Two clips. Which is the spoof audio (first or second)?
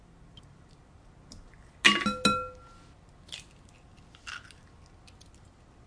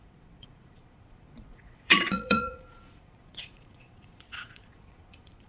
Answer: second